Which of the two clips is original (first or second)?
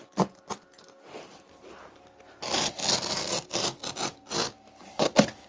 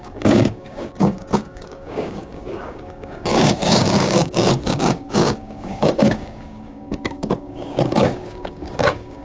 first